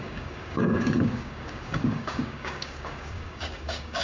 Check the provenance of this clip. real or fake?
fake